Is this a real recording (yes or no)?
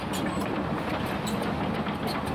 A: yes